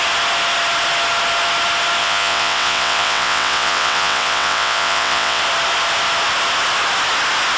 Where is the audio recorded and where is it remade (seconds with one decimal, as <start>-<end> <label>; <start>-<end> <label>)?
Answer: 0.0-2.0 recorded; 2.0-5.4 remade; 5.4-7.6 recorded